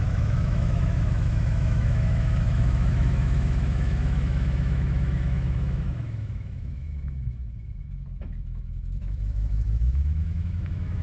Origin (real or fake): fake